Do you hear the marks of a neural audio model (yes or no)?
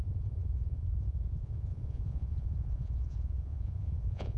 yes